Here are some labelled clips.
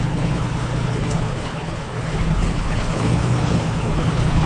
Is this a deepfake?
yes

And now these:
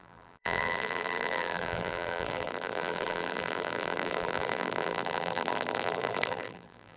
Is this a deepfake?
yes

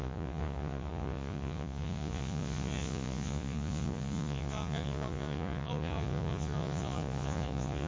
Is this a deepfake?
yes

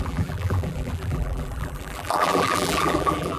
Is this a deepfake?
yes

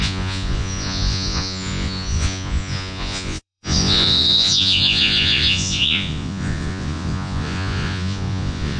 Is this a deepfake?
yes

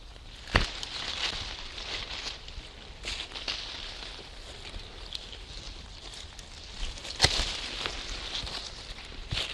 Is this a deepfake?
no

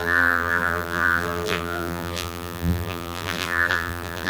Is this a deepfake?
yes